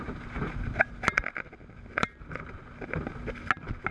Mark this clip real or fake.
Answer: real